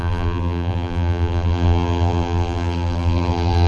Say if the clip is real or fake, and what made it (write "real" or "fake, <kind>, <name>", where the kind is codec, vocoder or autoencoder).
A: fake, vocoder, BigVGAN v2